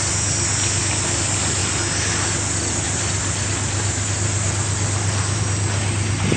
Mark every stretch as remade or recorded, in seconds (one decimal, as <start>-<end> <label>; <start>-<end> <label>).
0.0-6.4 recorded